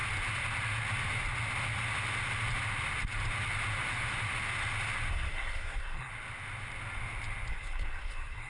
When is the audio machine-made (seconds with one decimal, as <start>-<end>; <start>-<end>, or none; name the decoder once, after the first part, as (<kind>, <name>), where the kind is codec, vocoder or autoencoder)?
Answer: 5.1-6.1 (codec, SNAC); 7.5-8.5